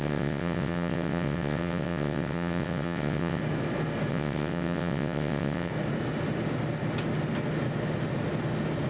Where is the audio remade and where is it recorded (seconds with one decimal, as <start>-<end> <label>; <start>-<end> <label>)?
0.0-3.4 remade; 3.4-4.1 recorded; 4.1-5.7 remade; 5.7-8.9 recorded